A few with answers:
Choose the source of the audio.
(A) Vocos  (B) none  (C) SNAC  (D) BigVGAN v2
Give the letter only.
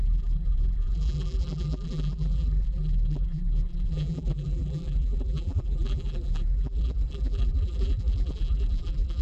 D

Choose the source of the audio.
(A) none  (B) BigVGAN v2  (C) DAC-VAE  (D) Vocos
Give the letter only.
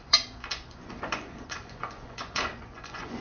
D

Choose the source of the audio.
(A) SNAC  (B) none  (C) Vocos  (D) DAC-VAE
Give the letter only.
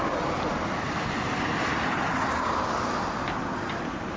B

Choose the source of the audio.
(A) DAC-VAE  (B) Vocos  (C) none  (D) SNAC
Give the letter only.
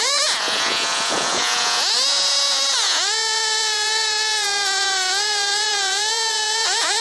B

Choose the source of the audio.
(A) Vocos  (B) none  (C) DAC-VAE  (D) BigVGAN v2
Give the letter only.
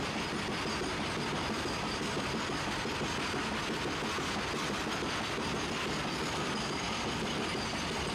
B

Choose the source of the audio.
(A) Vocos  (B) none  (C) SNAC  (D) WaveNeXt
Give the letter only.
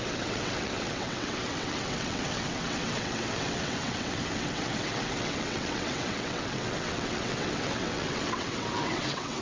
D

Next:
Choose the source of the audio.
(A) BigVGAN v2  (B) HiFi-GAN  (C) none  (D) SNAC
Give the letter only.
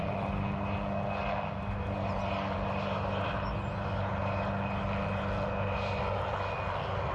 C